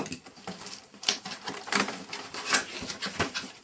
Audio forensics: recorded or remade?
remade